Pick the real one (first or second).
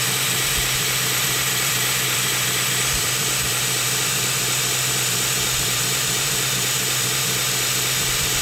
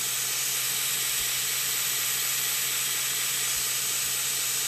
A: second